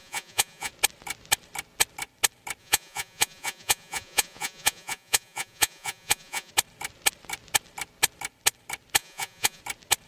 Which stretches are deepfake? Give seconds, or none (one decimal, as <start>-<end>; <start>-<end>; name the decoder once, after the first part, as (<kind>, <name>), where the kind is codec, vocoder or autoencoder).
0.0-0.7 (vocoder, Vocos); 2.6-6.5; 9.0-9.6